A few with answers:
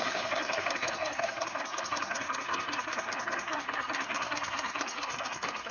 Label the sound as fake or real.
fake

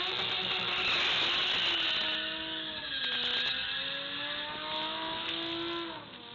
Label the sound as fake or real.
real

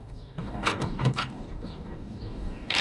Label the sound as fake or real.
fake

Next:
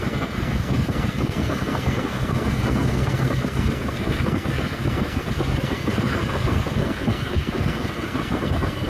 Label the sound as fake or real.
fake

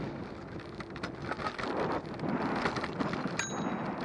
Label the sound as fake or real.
real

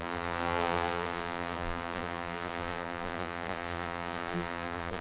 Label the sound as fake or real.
fake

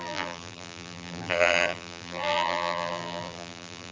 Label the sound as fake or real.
fake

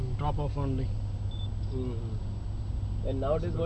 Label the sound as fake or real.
real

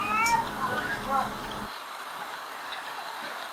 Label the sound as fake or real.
fake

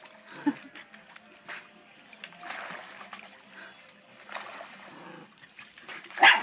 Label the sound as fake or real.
real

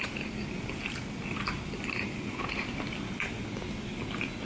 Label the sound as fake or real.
real